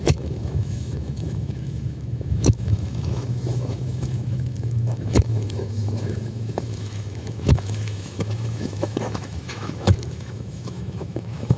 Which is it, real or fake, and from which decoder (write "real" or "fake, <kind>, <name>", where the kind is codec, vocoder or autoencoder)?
fake, autoencoder, DAC-VAE